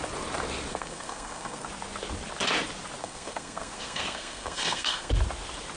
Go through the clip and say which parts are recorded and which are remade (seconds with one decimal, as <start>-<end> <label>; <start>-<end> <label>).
0.0-0.7 recorded; 0.7-1.7 remade; 1.7-3.0 recorded; 3.0-5.1 remade; 5.1-5.8 recorded